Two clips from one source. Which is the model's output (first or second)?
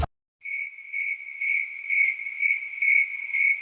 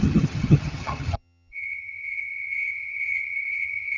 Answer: second